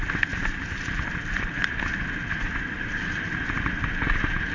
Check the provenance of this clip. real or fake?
real